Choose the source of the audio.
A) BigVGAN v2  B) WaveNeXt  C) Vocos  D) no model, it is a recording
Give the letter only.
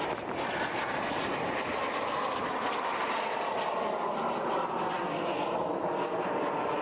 D